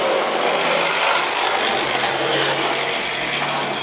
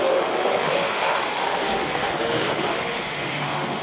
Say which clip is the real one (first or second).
first